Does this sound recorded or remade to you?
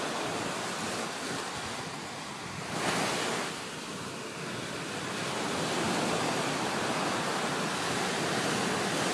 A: recorded